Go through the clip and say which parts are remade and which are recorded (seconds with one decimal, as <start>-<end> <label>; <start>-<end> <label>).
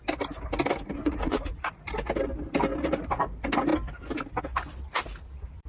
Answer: 0.0-1.0 recorded; 1.0-1.7 remade; 1.7-5.7 recorded